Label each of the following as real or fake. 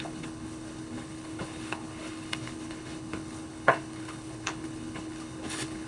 fake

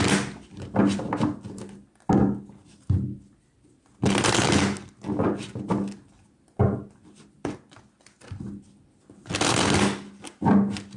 real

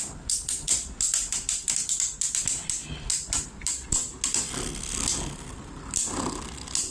real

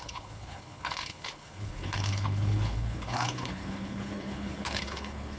fake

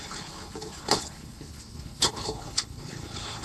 fake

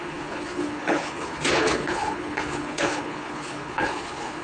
fake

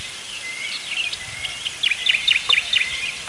real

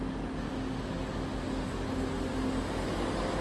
real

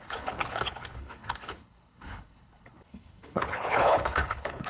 fake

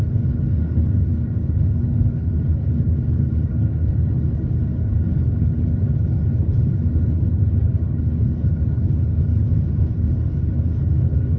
fake